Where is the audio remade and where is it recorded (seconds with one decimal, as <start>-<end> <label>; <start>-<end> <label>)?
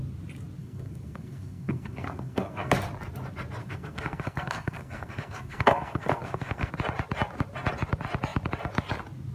0.0-0.6 recorded; 0.6-2.7 remade; 2.7-3.6 recorded; 3.6-6.7 remade; 6.7-9.3 recorded